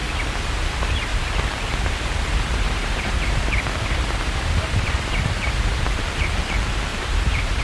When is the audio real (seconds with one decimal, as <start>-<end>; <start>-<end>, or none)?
0.0-1.1; 5.7-6.9